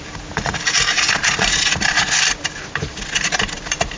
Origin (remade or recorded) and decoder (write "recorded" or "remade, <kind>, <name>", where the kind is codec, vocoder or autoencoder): recorded